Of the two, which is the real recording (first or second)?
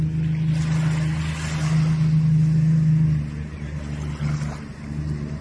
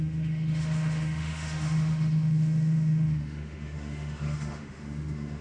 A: first